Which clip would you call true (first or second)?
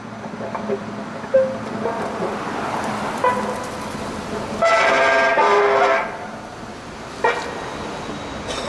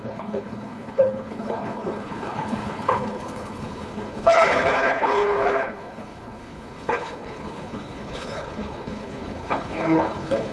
first